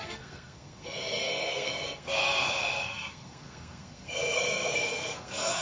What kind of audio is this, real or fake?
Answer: fake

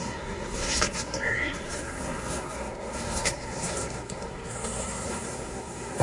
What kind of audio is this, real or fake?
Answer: fake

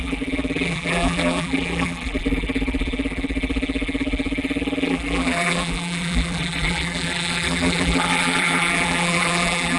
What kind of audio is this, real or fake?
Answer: fake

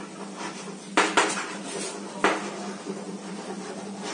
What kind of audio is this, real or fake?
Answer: real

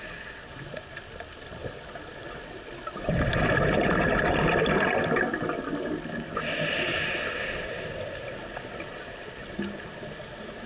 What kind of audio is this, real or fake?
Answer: real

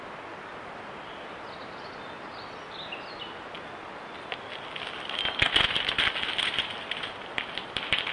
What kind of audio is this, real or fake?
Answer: real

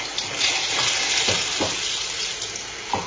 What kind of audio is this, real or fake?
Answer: real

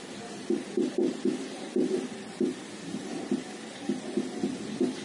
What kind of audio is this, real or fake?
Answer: real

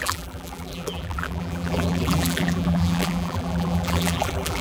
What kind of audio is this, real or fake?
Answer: fake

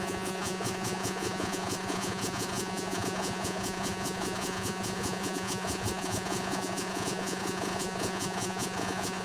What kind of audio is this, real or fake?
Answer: fake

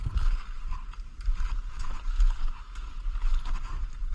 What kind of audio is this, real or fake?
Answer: real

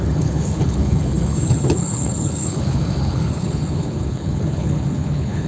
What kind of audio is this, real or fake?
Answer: fake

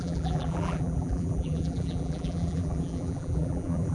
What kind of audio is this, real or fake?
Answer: fake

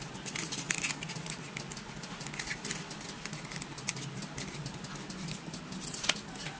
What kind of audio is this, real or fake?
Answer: real